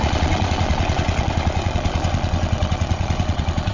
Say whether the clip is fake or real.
fake